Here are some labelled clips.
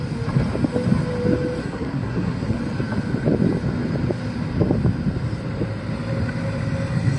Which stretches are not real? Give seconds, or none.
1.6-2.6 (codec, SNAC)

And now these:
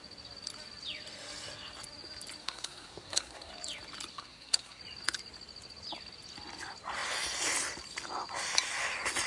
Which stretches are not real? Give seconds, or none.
2.4-3.5 (codec, SNAC); 4.1-4.8

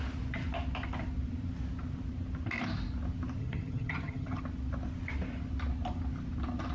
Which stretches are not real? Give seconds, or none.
3.4-4.4 (vocoder, HiFi-GAN)